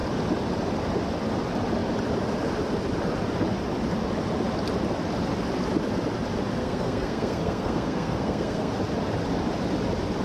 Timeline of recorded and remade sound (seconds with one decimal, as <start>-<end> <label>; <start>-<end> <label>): 0.0-6.6 recorded; 6.6-8.7 remade; 8.7-10.2 recorded